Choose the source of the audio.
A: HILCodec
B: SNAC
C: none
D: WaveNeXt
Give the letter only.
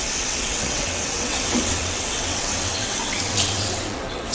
D